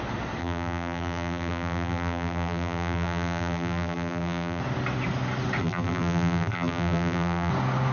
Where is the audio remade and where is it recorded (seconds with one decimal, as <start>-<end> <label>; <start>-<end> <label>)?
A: 0.0-0.4 recorded; 0.4-4.6 remade; 4.6-5.6 recorded; 5.6-7.5 remade; 7.5-7.9 recorded